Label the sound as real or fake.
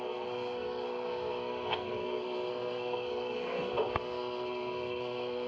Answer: fake